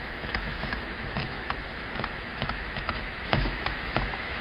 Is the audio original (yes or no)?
no